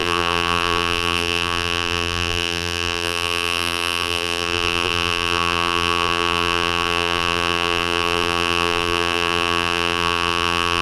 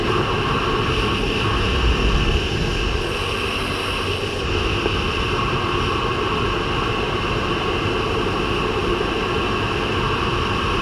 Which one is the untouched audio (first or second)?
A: second